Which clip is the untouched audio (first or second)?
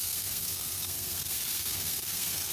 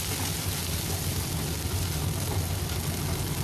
second